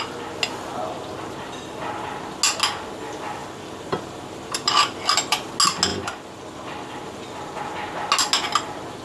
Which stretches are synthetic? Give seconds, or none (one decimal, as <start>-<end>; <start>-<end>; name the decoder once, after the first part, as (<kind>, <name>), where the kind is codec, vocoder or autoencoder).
3.4-5.5 (vocoder, BigVGAN v2); 5.9-7.6